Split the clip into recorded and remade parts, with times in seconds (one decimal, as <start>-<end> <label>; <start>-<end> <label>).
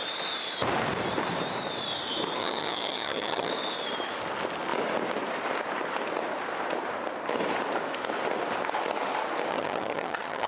0.0-2.4 recorded; 2.4-3.5 remade; 3.5-9.5 recorded; 9.5-10.5 remade